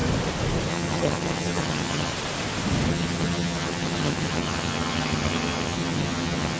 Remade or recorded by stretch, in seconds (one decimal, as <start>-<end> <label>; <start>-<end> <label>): 0.0-0.7 recorded; 0.7-2.1 remade; 2.1-2.9 recorded; 2.9-6.6 remade